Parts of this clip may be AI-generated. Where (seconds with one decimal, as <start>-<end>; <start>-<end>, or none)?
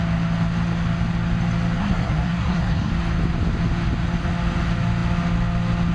1.8-2.9